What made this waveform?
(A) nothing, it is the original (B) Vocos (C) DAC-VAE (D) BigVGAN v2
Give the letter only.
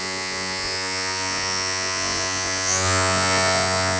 B